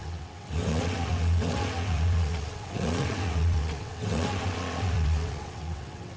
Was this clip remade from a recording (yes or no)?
yes